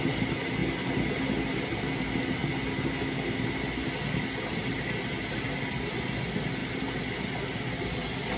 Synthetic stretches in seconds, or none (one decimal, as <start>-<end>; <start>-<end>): none